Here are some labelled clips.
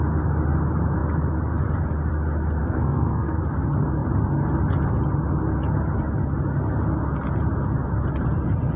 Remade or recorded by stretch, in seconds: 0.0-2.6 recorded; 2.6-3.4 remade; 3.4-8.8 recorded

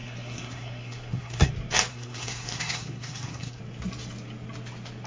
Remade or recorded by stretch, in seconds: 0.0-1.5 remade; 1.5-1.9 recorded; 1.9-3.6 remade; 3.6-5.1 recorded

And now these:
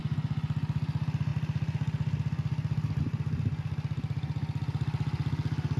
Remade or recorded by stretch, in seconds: 0.0-5.8 recorded